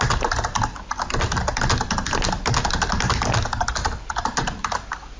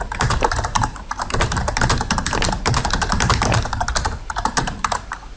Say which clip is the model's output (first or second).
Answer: second